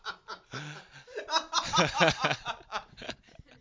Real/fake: real